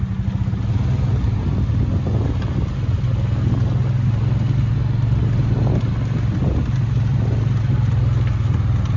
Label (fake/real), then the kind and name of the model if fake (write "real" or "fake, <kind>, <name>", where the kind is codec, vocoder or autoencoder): real